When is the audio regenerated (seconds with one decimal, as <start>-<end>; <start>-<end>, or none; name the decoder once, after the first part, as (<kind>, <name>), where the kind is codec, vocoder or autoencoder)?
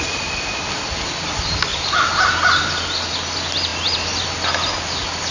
1.7-2.3 (vocoder, BigVGAN v2)